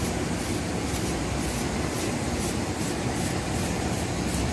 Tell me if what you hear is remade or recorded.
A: recorded